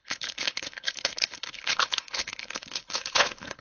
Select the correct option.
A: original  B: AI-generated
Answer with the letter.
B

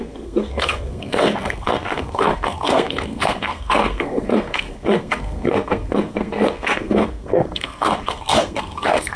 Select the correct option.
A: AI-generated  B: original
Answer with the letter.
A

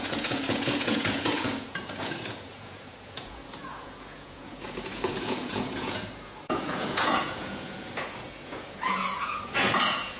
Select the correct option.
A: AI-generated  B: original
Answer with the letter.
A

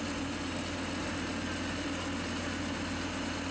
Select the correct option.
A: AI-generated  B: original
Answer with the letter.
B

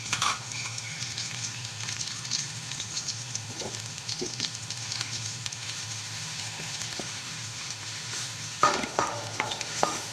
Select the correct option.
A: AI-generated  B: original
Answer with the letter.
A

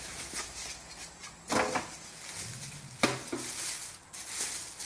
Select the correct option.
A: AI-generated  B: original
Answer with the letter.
B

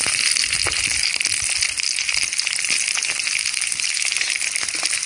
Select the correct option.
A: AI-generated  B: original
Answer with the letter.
B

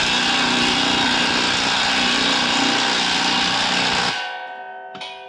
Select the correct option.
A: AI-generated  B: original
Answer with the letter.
B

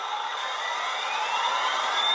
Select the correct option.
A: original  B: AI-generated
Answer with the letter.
A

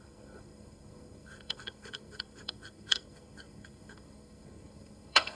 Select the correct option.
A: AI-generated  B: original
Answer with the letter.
A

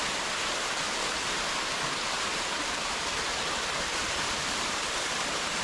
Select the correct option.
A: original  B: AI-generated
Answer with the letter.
B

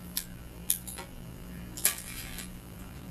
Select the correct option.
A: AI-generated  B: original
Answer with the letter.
A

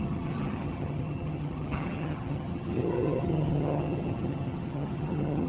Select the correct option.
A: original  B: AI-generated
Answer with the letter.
B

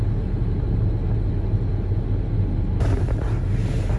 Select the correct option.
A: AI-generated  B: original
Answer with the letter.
B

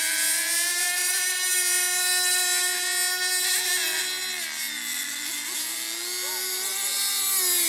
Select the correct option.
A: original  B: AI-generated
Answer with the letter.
A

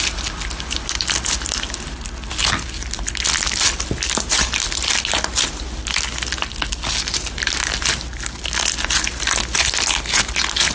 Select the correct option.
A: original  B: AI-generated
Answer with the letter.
A